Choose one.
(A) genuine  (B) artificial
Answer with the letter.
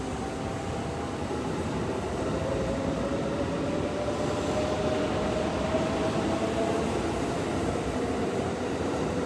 A